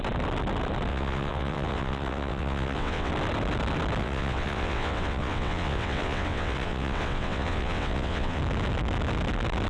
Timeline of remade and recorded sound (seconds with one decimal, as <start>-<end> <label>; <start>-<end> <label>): 0.0-0.9 recorded; 0.9-3.1 remade; 3.1-4.0 recorded; 4.0-8.4 remade; 8.4-9.7 recorded